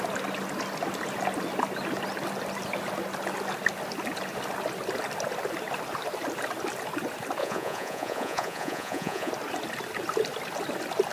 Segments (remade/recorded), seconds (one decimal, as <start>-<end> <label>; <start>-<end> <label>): 0.0-7.4 recorded; 7.4-9.3 remade; 9.3-11.1 recorded